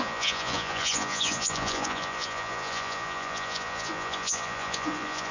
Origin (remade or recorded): remade